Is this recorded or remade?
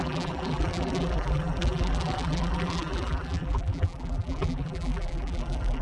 remade